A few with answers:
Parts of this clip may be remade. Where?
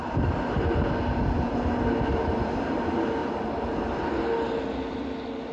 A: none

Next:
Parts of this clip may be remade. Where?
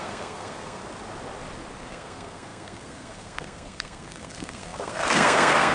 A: 0.0-0.8 (codec, SNAC); 1.8-5.7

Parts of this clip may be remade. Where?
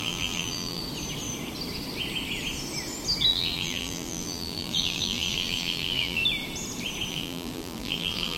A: 0.0-0.8 (vocoder, BigVGAN v2); 3.3-6.2; 7.1-8.4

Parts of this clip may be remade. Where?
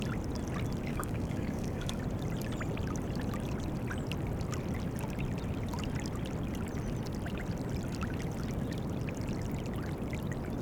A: 0.9-2.0 (codec, DAC)